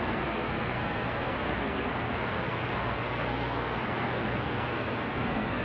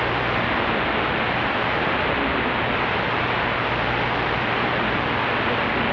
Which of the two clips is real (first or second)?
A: second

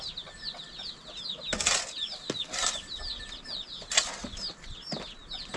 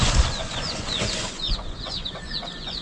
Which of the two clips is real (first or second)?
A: first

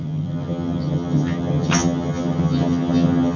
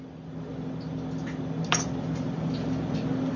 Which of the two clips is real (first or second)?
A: second